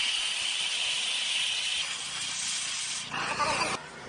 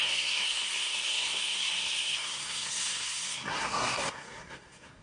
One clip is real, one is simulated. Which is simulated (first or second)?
second